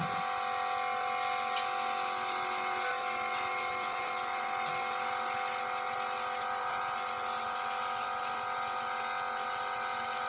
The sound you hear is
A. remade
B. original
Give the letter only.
B